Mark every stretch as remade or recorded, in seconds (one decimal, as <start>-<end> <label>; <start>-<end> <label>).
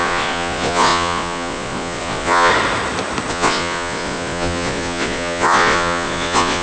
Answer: 0.0-2.5 remade; 2.5-3.3 recorded; 3.3-6.6 remade